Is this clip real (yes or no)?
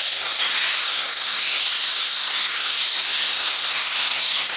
no